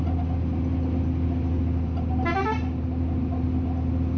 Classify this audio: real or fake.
real